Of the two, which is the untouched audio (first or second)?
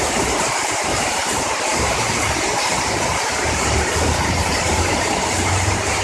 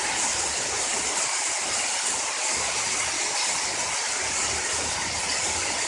second